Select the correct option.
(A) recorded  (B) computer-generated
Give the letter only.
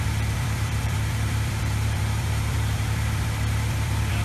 B